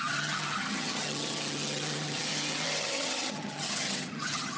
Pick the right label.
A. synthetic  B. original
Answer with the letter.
A